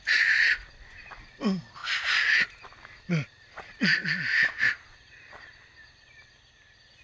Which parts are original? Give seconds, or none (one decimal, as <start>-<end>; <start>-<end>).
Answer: 0.0-7.0